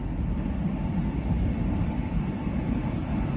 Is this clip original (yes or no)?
yes